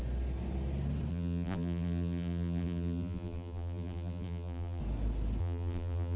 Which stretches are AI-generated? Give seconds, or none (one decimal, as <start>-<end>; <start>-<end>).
1.1-4.8; 5.4-6.2